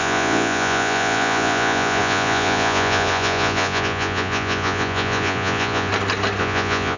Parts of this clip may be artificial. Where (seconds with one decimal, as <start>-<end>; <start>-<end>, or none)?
0.0-5.9; 6.4-7.0